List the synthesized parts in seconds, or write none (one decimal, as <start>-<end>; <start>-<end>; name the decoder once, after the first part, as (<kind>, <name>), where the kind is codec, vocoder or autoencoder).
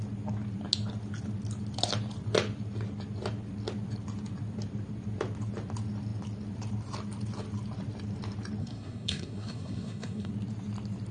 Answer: 8.6-10.3 (codec, SNAC)